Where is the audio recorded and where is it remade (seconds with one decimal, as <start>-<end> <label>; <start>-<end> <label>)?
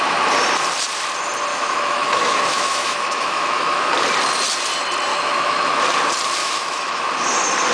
0.0-1.5 recorded; 1.5-3.9 remade; 3.9-5.1 recorded; 5.1-5.8 remade; 5.8-6.4 recorded; 6.4-7.0 remade; 7.0-7.7 recorded